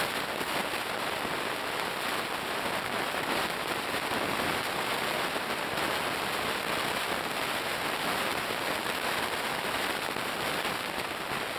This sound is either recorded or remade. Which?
recorded